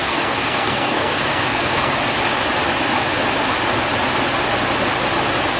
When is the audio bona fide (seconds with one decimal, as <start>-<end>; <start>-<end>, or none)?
1.9-5.6